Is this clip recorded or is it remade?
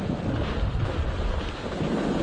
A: recorded